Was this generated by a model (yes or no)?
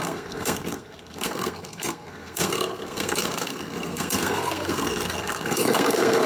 yes